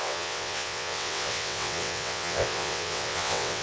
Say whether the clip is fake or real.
fake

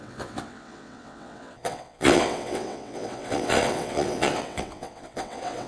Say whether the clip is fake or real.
fake